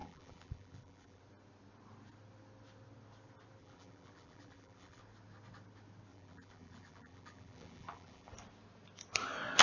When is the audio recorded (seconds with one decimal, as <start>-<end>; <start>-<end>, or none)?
1.2-3.6; 5.0-6.1; 8.3-9.6